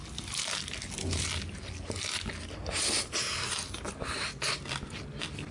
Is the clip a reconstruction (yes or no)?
no